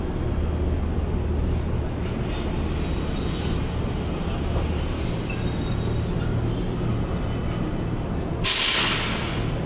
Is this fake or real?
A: real